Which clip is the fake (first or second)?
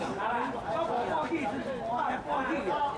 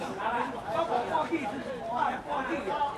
second